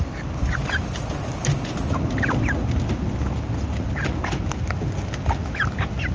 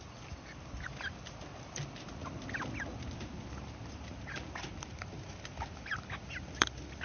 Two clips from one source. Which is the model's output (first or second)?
second